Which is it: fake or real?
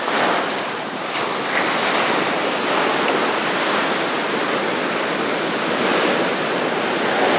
real